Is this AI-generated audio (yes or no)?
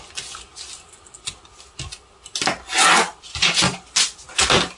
no